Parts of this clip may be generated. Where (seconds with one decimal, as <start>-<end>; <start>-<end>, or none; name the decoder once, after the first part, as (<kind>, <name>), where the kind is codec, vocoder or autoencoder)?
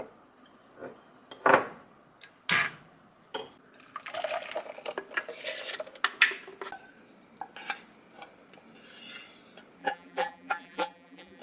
9.8-11.4 (vocoder, BigVGAN v2)